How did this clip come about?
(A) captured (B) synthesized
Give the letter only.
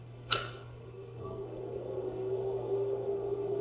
B